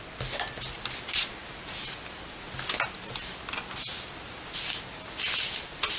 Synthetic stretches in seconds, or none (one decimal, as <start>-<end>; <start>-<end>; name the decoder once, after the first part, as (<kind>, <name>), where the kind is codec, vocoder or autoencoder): none